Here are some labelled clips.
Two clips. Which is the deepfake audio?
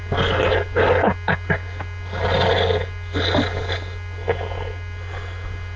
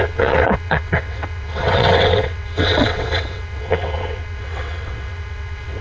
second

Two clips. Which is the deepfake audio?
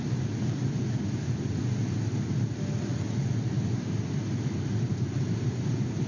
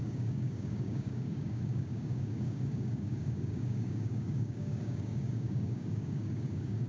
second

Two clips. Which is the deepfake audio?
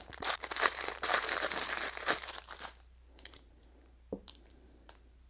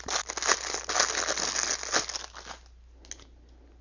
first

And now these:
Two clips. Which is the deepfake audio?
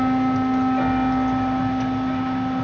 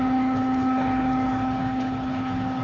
second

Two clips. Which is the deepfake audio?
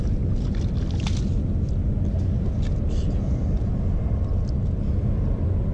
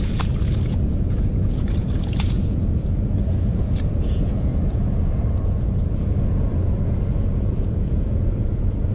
second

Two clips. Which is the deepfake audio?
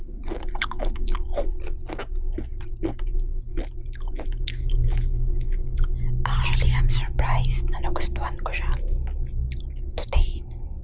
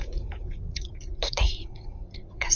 second